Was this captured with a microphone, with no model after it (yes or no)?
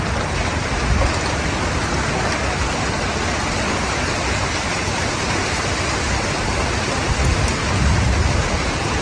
yes